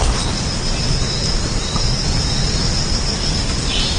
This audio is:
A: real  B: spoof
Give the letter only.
A